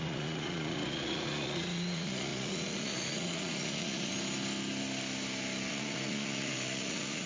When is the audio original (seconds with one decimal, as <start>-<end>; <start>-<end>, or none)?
4.1-5.7